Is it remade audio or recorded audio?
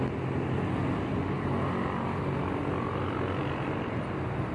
recorded